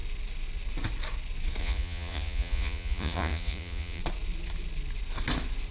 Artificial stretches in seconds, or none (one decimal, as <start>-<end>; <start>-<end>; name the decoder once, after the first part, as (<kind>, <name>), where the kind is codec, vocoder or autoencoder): 1.6-4.0 (vocoder, Vocos)